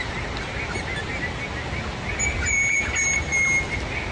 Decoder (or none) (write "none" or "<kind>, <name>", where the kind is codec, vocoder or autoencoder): none